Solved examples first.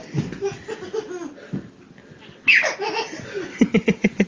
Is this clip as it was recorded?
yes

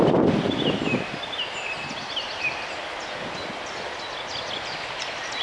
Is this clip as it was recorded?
yes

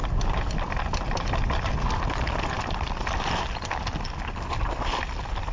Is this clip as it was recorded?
yes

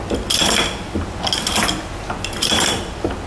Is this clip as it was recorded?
yes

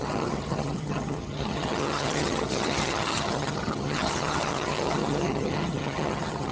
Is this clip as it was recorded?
no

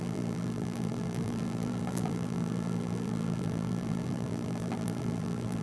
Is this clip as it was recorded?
no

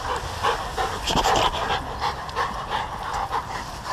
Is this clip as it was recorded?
yes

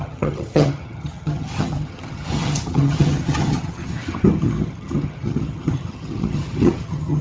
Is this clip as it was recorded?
no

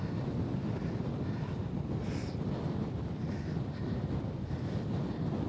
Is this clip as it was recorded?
yes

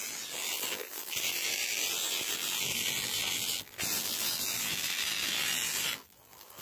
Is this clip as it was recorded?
no